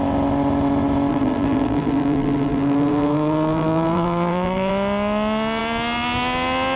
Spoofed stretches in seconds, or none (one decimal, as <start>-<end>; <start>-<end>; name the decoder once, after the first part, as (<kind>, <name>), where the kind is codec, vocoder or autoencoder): 1.1-4.7 (vocoder, BigVGAN v2)